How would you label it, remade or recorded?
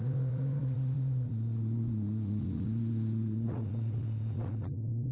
remade